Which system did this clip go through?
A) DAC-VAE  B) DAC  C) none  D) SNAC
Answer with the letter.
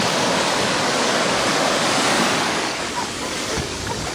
B